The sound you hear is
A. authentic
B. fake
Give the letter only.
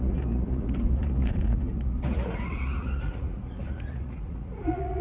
B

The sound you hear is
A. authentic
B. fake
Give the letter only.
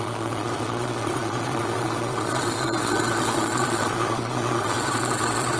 B